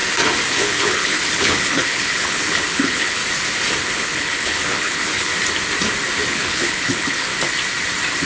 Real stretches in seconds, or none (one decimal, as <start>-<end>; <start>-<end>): 0.0-0.5; 3.2-3.8; 5.3-6.3; 7.3-8.2